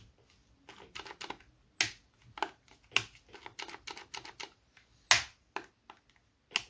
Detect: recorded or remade recorded